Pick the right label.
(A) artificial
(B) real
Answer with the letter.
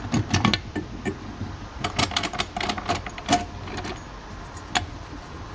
B